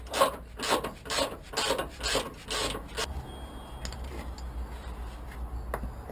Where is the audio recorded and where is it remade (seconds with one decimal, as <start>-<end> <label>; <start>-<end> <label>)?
0.0-6.1 recorded